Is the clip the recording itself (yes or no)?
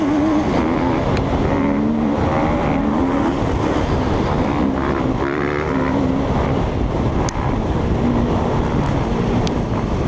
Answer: yes